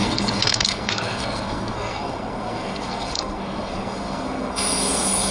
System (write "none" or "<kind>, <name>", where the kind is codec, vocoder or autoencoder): codec, SNAC